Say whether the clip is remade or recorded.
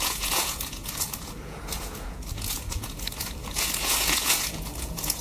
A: remade